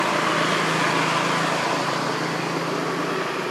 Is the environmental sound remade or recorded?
recorded